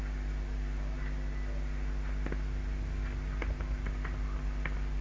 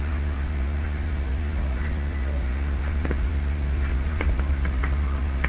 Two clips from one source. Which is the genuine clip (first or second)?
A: first